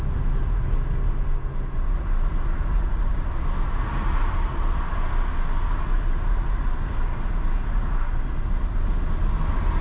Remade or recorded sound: recorded